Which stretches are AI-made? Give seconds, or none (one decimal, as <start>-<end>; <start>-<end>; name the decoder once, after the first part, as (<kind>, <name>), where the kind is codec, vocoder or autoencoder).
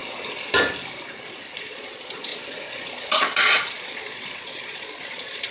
1.6-2.3 (vocoder, Vocos); 2.8-5.5